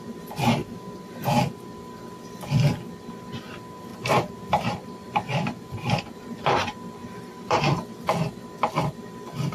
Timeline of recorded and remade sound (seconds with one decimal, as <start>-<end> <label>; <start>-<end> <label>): 0.0-3.9 recorded; 3.9-6.4 remade; 6.4-7.0 recorded; 7.0-7.6 remade; 7.6-9.5 recorded